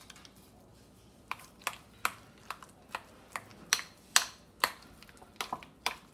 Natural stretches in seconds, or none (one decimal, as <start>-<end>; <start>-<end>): 0.0-6.1